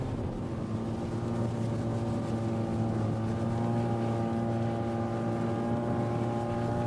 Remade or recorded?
recorded